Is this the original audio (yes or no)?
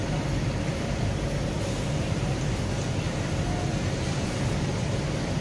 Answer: yes